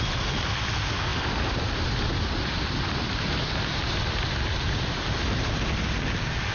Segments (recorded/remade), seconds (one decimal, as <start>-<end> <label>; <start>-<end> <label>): 0.0-1.1 recorded; 1.1-2.9 remade; 2.9-6.5 recorded

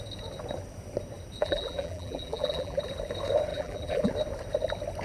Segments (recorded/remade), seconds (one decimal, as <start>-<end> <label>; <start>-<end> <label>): 0.0-1.4 recorded; 1.4-2.8 remade; 2.8-3.5 recorded; 3.5-4.1 remade; 4.1-5.0 recorded

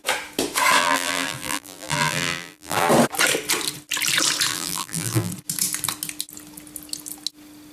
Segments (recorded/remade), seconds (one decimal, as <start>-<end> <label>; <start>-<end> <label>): 0.0-0.8 recorded; 0.8-2.9 remade; 2.9-4.5 recorded; 4.5-5.3 remade; 5.3-7.7 recorded

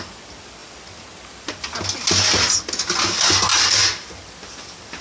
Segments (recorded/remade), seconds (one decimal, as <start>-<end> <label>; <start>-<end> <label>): 0.0-3.5 recorded; 3.5-4.1 remade; 4.1-5.0 recorded

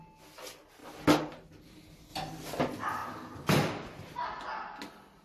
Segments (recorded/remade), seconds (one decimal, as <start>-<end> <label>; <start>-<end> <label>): 0.0-5.2 recorded

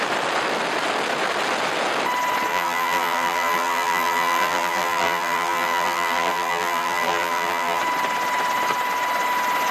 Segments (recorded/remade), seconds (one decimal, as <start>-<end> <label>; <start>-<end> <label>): 0.0-2.5 recorded; 2.5-7.8 remade; 7.8-9.7 recorded

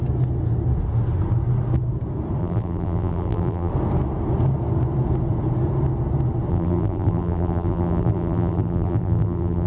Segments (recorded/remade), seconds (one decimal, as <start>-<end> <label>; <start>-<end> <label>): 0.0-2.4 recorded; 2.4-3.7 remade; 3.7-6.5 recorded; 6.5-9.7 remade

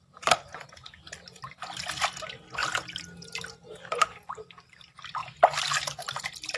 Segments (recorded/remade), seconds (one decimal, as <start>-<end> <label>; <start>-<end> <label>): 0.0-2.6 remade; 2.6-4.0 recorded; 4.0-5.2 remade; 5.2-6.0 recorded; 6.0-6.6 remade